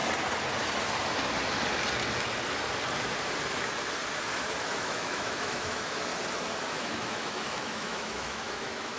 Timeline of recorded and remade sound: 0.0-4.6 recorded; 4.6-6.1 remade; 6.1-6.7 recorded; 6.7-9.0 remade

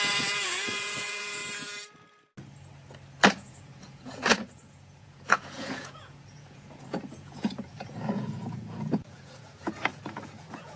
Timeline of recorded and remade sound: 0.0-1.4 remade; 1.4-3.3 recorded; 3.3-10.8 remade